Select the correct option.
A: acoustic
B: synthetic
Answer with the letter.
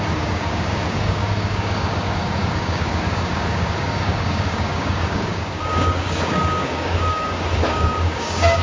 B